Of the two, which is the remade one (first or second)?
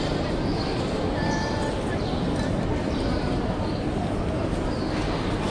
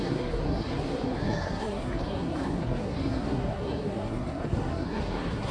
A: second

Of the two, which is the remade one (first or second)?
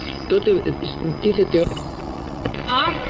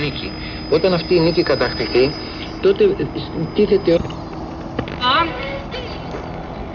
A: first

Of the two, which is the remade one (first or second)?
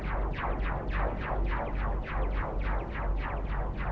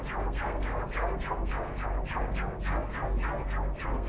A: second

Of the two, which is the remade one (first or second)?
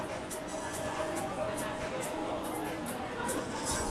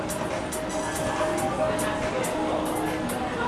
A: first